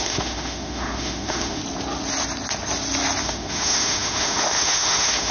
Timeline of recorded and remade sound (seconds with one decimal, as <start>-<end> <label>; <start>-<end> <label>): 0.0-1.6 remade; 1.6-3.2 recorded; 3.2-5.3 remade